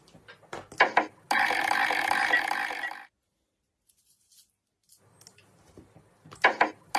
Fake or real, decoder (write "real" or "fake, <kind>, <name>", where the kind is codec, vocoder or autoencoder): real